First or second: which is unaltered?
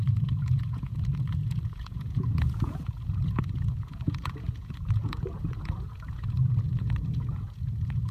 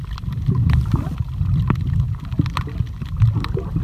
second